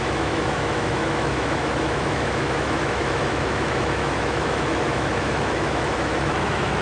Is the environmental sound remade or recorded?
remade